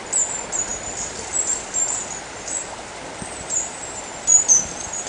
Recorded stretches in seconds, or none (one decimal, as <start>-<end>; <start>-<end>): 0.0-0.7; 3.8-5.1